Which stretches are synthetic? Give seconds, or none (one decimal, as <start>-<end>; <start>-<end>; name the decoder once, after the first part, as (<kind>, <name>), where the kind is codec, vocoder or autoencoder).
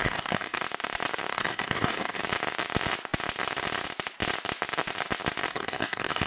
0.0-0.6 (codec, DAC); 1.3-2.2; 5.5-6.3